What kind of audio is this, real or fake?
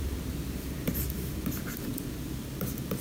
fake